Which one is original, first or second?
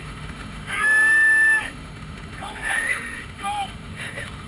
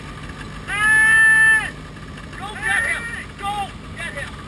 second